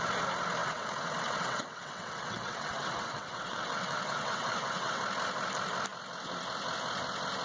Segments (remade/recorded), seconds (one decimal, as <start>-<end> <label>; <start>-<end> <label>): 0.0-0.6 recorded; 0.6-5.0 remade; 5.0-7.4 recorded

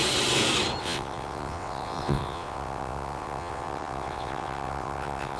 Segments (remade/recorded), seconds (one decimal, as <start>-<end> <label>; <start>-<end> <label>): 0.0-0.8 recorded; 0.8-5.4 remade

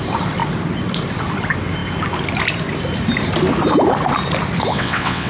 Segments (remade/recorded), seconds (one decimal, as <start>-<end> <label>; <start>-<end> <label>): 0.0-4.7 recorded; 4.7-5.3 remade